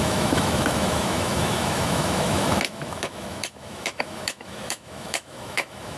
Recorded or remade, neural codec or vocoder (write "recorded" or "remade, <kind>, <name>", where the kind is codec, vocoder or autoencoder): remade, autoencoder, DAC-VAE